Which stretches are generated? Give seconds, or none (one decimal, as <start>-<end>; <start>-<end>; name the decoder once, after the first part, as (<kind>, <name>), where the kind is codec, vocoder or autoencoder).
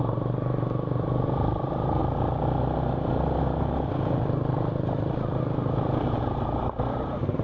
0.0-2.0 (vocoder, BigVGAN v2); 5.4-7.4